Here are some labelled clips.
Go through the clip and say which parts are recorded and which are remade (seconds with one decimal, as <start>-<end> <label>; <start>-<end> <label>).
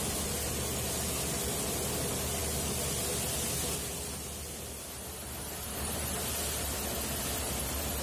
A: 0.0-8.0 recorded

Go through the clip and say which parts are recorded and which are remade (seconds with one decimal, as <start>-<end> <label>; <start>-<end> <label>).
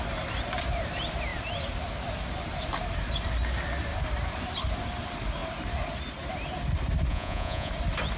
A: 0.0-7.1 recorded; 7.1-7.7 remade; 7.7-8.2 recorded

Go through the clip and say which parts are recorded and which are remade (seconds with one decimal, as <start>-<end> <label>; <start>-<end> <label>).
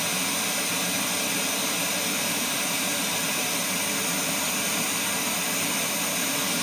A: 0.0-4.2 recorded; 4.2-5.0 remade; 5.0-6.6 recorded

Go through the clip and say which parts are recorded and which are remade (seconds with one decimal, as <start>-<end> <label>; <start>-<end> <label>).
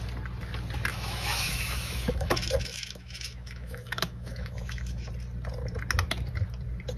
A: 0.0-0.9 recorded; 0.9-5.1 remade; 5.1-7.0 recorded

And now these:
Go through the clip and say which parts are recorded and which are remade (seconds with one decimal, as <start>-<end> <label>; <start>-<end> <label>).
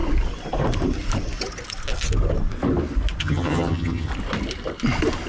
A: 0.0-3.2 recorded; 3.2-4.1 remade; 4.1-5.3 recorded